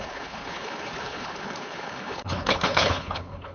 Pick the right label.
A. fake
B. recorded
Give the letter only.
A